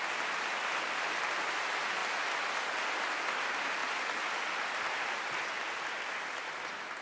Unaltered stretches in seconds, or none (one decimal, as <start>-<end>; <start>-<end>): 0.0-7.0